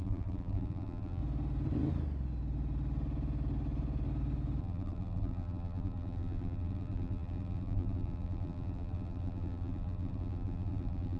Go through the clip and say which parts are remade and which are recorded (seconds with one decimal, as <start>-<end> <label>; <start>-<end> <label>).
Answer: 0.0-1.2 remade; 1.2-4.6 recorded; 4.6-11.2 remade